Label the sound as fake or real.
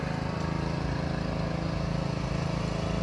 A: real